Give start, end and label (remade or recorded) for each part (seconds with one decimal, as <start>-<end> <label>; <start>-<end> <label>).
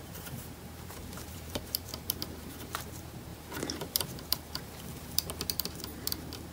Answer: 0.0-6.5 remade